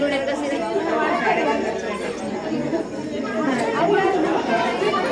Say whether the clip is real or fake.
real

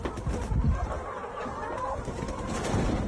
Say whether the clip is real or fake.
real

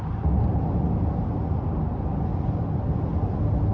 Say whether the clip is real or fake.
real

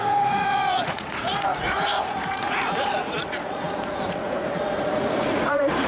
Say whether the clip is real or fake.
fake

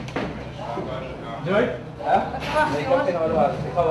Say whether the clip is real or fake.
real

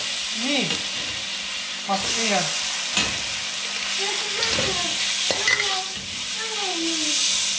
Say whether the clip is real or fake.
real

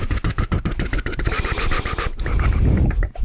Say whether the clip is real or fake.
real